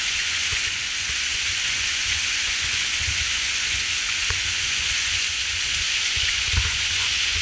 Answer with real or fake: fake